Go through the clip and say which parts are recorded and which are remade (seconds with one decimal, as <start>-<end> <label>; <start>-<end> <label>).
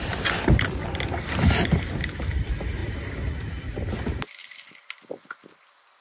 0.0-6.0 recorded